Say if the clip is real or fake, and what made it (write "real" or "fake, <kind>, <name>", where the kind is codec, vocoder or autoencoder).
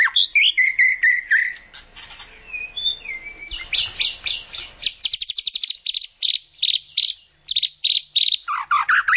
real